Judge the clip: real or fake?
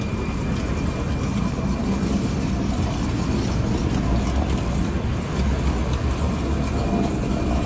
real